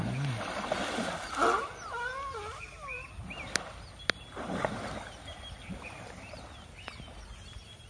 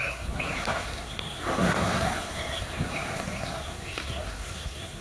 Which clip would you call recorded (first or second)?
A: first